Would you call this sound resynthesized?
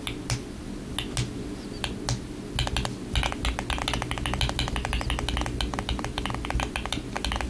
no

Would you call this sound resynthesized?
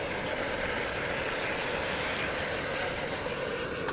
no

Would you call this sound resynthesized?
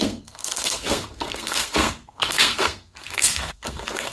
yes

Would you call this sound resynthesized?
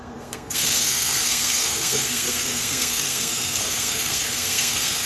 yes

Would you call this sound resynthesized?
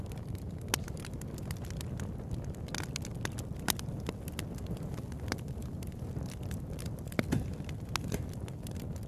no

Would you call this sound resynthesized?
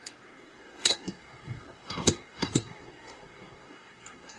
yes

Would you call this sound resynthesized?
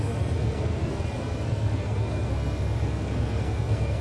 yes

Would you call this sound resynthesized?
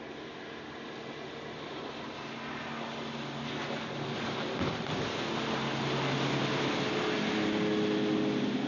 no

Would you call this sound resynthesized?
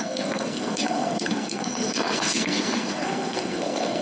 yes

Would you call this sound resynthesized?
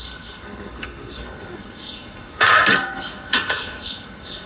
yes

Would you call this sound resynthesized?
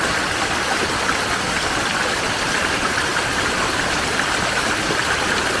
no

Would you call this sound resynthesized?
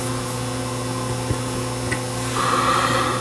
no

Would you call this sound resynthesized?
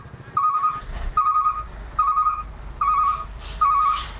no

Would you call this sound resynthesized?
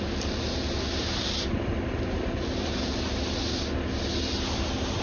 no